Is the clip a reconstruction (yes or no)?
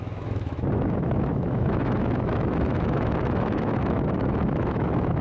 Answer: yes